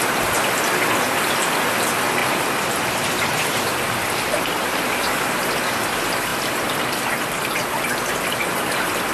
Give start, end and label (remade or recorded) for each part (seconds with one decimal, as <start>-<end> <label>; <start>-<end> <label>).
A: 0.0-2.2 recorded; 2.2-5.4 remade; 5.4-6.3 recorded; 6.3-7.5 remade; 7.5-9.1 recorded